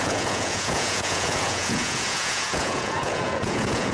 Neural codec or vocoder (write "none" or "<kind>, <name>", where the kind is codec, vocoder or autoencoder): vocoder, Vocos